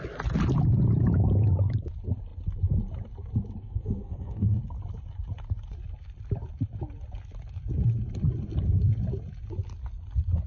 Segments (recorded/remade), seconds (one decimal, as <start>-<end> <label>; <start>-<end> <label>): 0.0-3.6 recorded; 3.6-4.6 remade; 4.6-10.5 recorded